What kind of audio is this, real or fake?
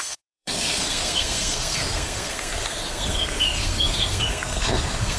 fake